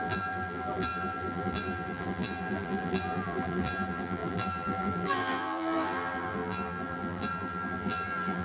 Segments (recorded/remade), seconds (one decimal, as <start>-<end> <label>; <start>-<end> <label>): 0.0-8.4 remade